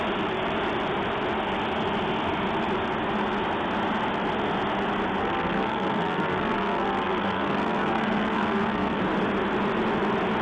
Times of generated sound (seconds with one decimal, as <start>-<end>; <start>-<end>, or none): 5.2-9.0